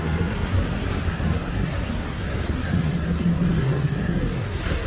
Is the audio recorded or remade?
remade